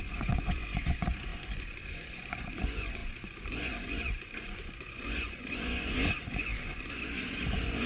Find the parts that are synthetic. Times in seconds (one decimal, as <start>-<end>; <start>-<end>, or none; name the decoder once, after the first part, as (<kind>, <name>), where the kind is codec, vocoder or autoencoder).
0.0-7.9 (vocoder, Vocos)